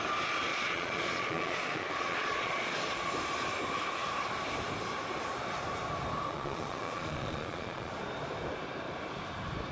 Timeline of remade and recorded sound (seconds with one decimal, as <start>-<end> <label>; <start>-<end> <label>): 0.0-0.5 recorded; 0.5-3.1 remade; 3.1-6.3 recorded; 6.3-7.9 remade; 7.9-9.7 recorded